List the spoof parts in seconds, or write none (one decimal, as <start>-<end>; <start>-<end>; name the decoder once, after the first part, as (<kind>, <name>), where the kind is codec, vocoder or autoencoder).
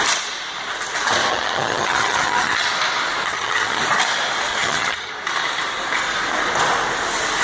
1.3-2.7 (vocoder, HiFi-GAN); 3.3-3.8; 4.5-5.1